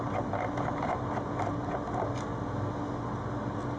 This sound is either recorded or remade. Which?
recorded